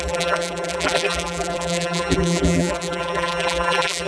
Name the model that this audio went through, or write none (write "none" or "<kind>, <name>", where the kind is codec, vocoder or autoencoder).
vocoder, BigVGAN v2